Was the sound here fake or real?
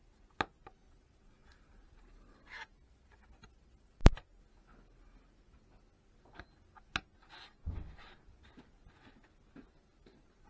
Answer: real